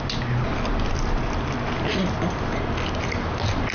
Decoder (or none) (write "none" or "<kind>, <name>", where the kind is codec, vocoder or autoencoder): none